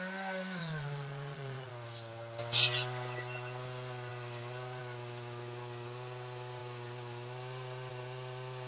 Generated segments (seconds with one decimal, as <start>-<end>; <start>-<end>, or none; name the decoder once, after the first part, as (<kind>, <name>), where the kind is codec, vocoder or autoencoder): 0.6-1.7 (vocoder, Vocos)